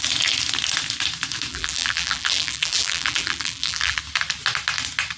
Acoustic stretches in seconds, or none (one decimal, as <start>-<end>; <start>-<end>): 0.0-1.5; 4.0-5.2